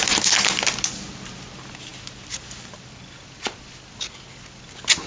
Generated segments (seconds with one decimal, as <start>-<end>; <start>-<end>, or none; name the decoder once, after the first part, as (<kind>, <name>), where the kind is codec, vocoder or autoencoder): none